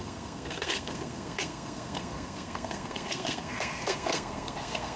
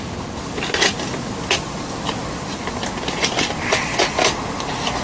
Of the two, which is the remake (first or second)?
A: first